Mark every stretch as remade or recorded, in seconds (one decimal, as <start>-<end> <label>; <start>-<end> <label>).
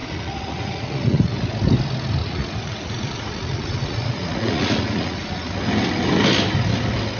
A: 0.0-1.5 remade; 1.5-2.2 recorded; 2.2-5.5 remade; 5.5-7.2 recorded